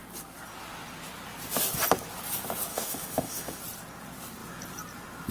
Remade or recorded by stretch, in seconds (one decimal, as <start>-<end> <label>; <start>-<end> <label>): 0.0-2.7 recorded; 2.7-3.6 remade; 3.6-5.3 recorded